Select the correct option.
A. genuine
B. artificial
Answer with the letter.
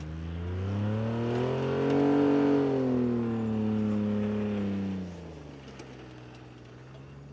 A